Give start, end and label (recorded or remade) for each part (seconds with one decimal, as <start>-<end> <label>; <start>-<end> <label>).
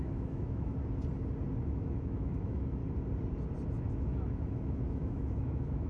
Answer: 0.0-0.7 remade; 0.7-1.6 recorded; 1.6-2.8 remade; 2.8-3.9 recorded; 3.9-5.9 remade